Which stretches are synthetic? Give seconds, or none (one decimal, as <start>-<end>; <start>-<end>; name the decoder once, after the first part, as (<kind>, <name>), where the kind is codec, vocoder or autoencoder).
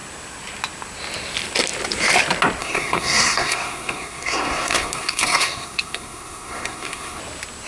2.6-7.2 (codec, SNAC)